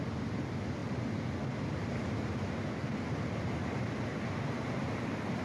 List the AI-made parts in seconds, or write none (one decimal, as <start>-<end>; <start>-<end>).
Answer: none